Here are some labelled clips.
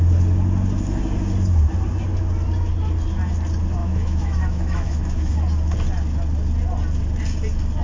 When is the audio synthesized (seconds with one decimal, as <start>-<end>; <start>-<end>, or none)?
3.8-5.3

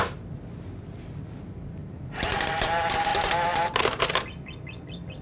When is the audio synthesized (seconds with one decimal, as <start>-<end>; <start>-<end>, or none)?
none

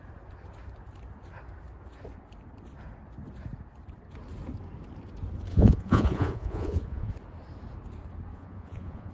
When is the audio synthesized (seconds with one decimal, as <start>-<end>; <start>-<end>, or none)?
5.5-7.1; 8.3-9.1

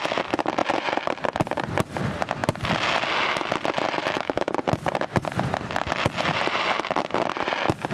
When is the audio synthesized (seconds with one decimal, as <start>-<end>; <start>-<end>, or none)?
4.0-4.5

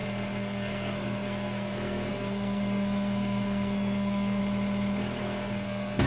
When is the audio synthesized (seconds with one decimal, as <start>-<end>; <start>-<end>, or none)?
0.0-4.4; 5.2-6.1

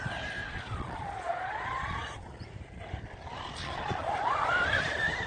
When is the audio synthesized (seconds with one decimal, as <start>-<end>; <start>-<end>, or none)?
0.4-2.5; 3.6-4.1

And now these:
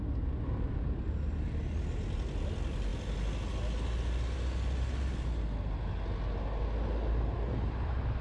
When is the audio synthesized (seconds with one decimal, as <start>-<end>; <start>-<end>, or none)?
none